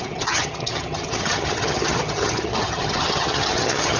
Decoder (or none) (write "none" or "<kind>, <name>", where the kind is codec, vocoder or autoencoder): vocoder, HiFi-GAN